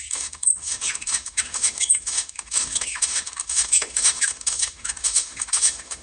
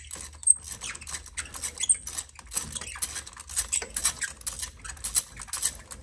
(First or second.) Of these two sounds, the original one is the second